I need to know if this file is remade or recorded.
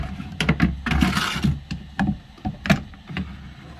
recorded